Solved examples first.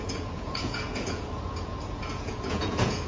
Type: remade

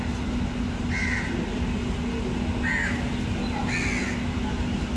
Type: recorded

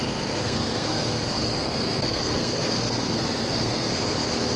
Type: remade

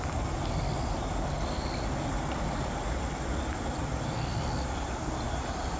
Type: recorded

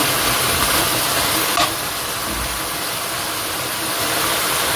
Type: recorded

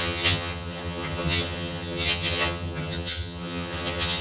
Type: remade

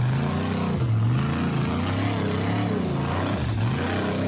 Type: recorded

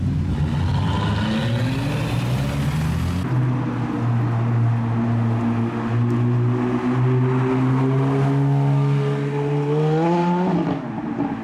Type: recorded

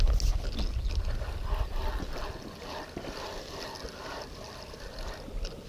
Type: recorded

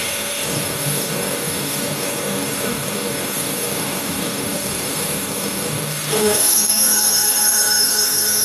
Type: remade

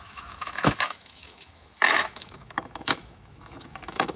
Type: remade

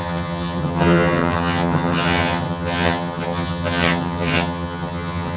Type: remade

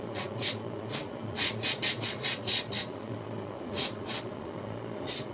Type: remade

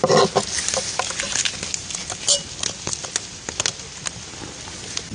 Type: recorded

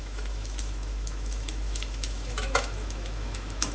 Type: remade